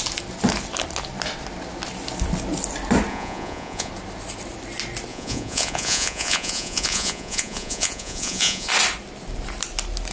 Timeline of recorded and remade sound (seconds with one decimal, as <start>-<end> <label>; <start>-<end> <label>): 0.0-3.1 recorded; 3.1-3.9 remade; 3.9-5.1 recorded; 5.1-8.7 remade; 8.7-10.1 recorded

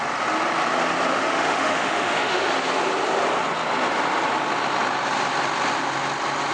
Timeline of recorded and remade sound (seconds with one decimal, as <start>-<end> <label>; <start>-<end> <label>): 0.0-1.1 recorded; 1.1-2.5 remade; 2.5-6.5 recorded

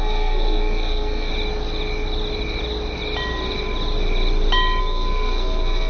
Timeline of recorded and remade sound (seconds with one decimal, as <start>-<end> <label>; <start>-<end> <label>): 0.0-1.3 remade; 1.3-4.8 recorded; 4.8-5.9 remade

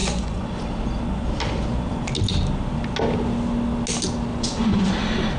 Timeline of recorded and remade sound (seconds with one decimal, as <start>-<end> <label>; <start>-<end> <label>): 0.0-0.7 remade; 0.7-4.3 recorded; 4.3-4.9 remade; 4.9-5.4 recorded

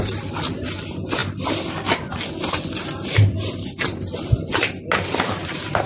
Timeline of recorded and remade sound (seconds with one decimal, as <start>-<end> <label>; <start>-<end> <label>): 0.0-5.9 recorded

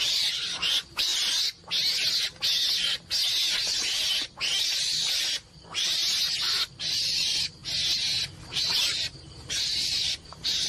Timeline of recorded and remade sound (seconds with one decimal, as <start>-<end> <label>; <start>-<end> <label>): 0.0-1.1 remade; 1.1-4.6 recorded; 4.6-6.0 remade; 6.0-6.8 recorded; 6.8-7.6 remade; 7.6-8.5 recorded; 8.5-10.7 remade